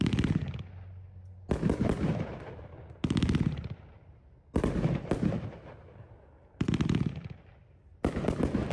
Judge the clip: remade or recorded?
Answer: recorded